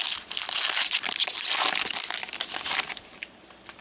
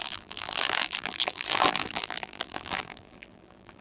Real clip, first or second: first